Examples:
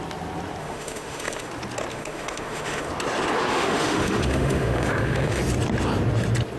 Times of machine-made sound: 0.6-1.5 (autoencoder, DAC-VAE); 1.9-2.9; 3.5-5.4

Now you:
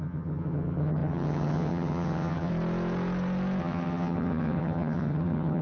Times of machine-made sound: 0.0-2.5 (vocoder, HiFi-GAN); 3.6-5.6

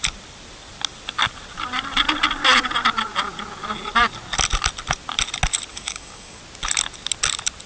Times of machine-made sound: 5.7-6.4 (codec, DAC)

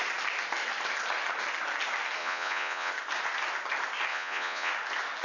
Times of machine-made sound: 2.2-2.9 (vocoder, Vocos); 4.1-4.7

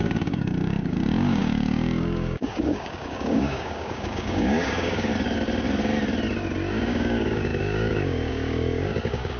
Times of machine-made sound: 0.0-5.1 (codec, DAC); 6.7-9.4